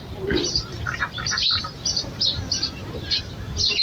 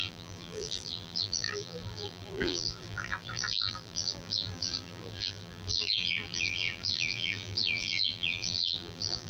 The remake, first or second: second